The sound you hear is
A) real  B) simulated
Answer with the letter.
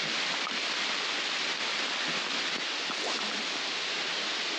A